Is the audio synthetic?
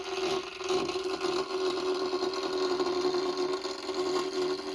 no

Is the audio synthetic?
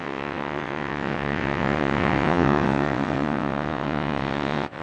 yes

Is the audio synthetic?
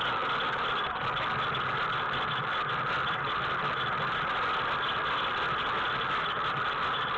no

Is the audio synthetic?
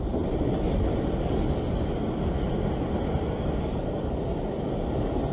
no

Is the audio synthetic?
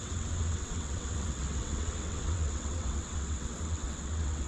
yes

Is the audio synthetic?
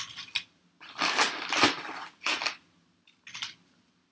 no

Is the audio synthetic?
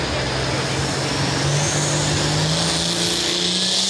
no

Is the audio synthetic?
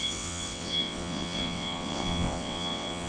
yes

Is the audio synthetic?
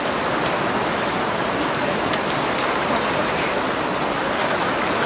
no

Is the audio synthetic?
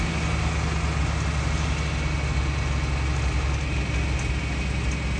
no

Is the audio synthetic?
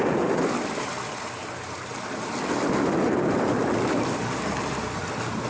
no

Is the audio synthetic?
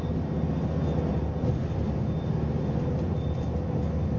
no